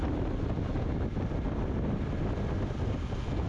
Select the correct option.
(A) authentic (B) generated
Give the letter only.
A